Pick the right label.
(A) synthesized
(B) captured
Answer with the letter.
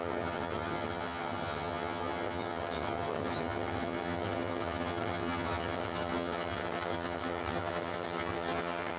A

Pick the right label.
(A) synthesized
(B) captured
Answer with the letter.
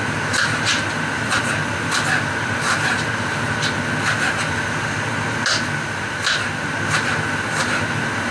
B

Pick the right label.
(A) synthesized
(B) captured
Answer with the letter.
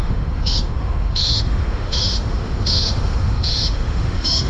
A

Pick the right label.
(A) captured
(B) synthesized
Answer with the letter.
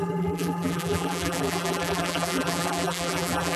B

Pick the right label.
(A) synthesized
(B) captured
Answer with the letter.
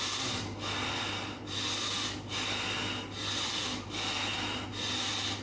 B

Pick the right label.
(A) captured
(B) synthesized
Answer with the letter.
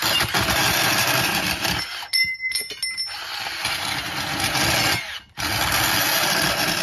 A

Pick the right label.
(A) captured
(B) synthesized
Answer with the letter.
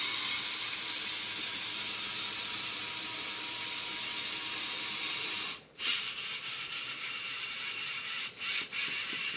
A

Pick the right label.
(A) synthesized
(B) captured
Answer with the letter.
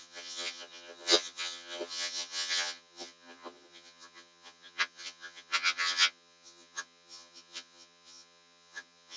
A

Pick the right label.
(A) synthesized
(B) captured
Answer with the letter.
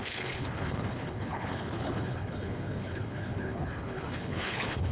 A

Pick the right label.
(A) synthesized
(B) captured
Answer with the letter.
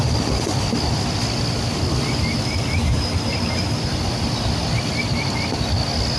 B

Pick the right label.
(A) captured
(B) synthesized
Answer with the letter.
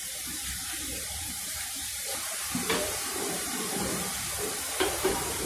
B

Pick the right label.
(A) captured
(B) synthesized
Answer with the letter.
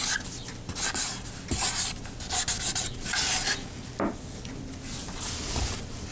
A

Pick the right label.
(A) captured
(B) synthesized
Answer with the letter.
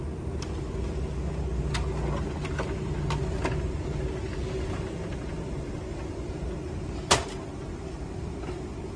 A